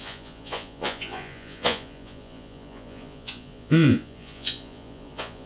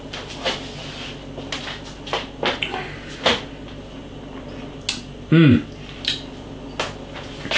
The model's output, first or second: first